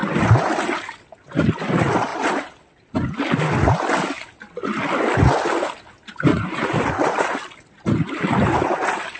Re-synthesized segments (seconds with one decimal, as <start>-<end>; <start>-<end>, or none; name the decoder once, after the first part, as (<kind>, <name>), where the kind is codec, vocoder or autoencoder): 6.3-6.8 (vocoder, Vocos)